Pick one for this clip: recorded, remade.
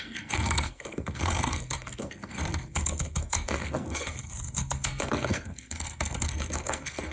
remade